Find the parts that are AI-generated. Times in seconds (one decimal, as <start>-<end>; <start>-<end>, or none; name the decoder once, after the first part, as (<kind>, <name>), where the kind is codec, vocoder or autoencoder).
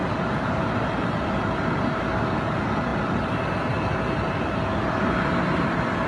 none